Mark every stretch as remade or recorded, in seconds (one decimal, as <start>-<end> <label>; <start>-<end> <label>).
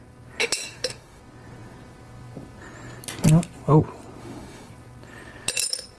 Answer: 0.0-0.4 recorded; 0.4-1.2 remade; 1.2-4.2 recorded; 4.2-4.7 remade; 4.7-6.0 recorded